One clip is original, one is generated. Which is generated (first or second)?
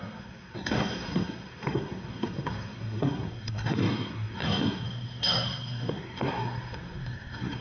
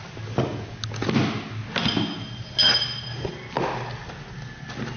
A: first